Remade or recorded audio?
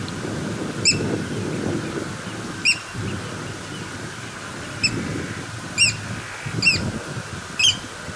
recorded